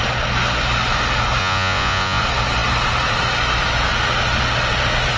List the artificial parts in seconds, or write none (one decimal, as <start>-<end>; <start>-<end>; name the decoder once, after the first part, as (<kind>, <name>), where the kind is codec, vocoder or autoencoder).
1.4-2.2 (vocoder, Vocos)